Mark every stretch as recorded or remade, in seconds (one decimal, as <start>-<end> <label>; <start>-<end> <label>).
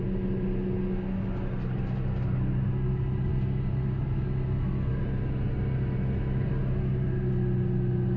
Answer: 0.0-8.2 recorded